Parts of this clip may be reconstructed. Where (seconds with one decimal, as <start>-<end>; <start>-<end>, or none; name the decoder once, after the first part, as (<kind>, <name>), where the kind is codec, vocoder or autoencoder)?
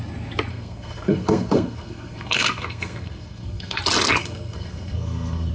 0.5-3.8 (codec, SNAC); 4.2-5.5